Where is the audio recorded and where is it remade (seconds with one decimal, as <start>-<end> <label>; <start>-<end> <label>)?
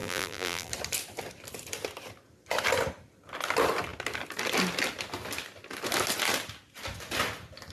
0.0-0.7 remade; 0.7-7.7 recorded